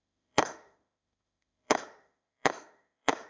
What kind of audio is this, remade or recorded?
remade